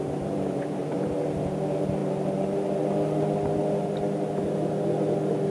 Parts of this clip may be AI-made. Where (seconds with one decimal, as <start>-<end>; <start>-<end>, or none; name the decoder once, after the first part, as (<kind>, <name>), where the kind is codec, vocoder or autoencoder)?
0.0-2.0 (vocoder, BigVGAN v2)

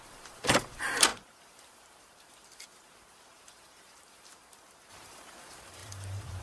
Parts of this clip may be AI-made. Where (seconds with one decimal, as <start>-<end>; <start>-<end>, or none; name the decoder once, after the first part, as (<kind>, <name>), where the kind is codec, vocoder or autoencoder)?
0.0-6.4 (vocoder, BigVGAN v2)

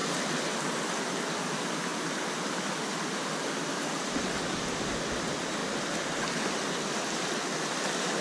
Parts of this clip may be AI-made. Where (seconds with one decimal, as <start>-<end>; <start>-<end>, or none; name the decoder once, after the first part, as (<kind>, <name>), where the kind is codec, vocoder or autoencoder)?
0.7-5.6 (vocoder, BigVGAN v2); 7.2-8.2